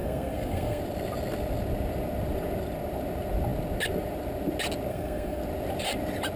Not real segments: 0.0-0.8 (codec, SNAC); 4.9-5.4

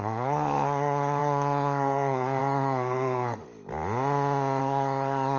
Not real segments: 0.0-3.4 (codec, SNAC); 4.6-5.4

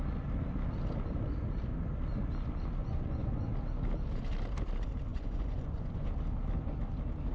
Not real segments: 2.8-3.5 (vocoder, Vocos); 5.1-6.1

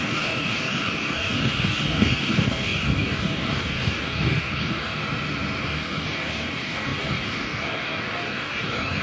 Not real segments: 0.0-5.0 (codec, DAC); 5.6-9.0

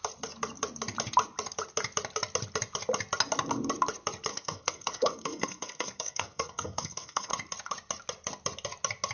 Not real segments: 4.3-7.3 (codec, SNAC)